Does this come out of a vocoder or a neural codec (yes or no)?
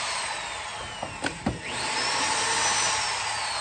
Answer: no